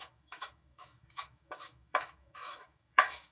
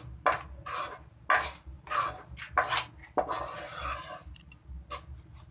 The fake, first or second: first